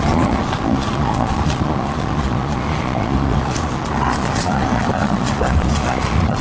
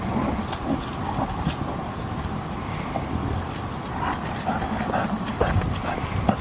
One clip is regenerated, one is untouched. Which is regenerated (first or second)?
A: first